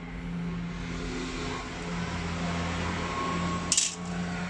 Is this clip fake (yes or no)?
no